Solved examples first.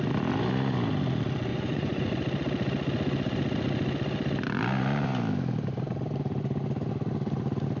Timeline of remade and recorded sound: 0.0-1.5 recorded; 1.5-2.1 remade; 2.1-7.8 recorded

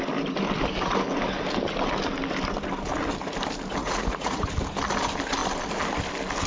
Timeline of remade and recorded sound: 0.0-3.8 recorded; 3.8-4.5 remade; 4.5-6.5 recorded